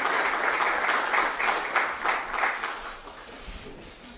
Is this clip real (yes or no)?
yes